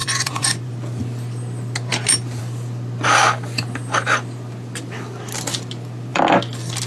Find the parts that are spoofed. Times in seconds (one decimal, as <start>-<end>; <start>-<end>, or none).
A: 0.0-0.7